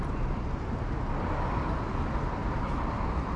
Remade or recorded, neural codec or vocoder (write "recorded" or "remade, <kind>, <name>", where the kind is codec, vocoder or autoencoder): recorded